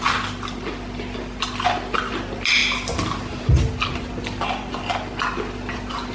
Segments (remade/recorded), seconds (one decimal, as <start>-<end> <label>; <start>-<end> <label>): 0.0-6.1 recorded